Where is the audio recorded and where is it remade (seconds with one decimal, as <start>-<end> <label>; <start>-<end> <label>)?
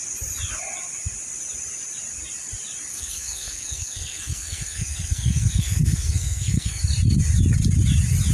0.0-2.9 recorded; 2.9-6.8 remade; 6.8-8.3 recorded